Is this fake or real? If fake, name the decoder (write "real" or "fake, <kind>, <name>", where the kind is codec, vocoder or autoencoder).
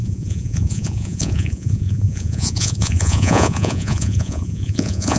fake, vocoder, Vocos